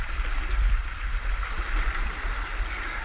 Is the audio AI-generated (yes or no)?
no